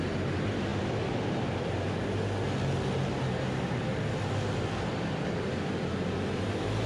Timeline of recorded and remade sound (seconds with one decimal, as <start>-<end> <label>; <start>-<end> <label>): 0.0-6.9 recorded